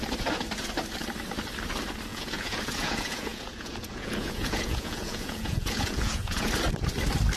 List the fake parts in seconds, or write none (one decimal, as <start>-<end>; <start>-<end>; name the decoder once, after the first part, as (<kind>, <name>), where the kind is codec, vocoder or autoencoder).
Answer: 2.1-6.5 (vocoder, Vocos)